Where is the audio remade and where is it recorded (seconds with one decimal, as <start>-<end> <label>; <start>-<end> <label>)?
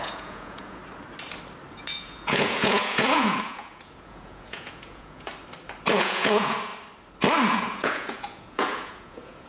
0.0-0.8 remade; 0.8-1.7 recorded; 1.7-5.3 remade; 5.3-5.9 recorded; 5.9-6.7 remade; 6.7-7.5 recorded; 7.5-9.5 remade